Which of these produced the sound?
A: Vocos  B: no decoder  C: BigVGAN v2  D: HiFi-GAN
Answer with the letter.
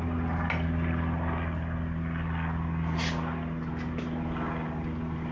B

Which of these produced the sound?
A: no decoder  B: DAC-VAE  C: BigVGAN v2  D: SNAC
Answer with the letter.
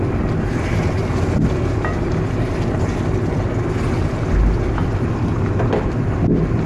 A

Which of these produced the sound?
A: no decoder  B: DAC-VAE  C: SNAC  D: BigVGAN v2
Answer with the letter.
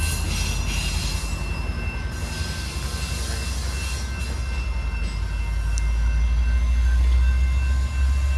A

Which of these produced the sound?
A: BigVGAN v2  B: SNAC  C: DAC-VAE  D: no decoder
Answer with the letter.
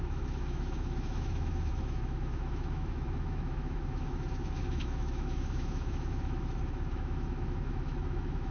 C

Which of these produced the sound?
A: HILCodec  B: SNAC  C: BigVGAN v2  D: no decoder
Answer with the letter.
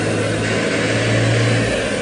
D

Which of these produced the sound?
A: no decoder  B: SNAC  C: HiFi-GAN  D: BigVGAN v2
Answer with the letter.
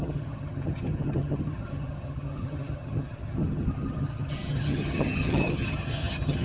C